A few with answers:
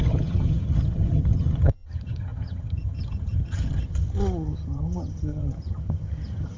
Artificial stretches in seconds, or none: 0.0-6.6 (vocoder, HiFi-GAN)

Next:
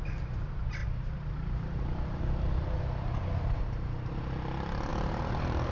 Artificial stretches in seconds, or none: 0.8-4.2 (vocoder, BigVGAN v2); 4.9-5.7

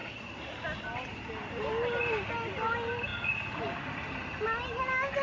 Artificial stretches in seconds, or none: 0.0-0.8 (vocoder, BigVGAN v2)

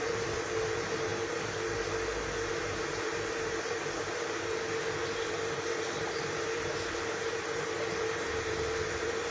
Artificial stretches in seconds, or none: 0.0-1.1 (vocoder, BigVGAN v2); 2.5-9.3